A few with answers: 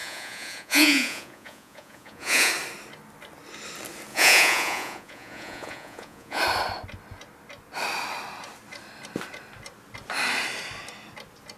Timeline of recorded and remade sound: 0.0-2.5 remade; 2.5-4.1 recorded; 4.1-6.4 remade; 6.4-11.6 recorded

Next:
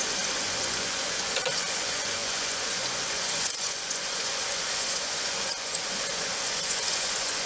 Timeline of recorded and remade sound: 0.0-7.5 remade

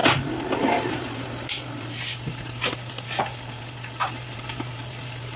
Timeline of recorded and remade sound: 0.0-5.4 recorded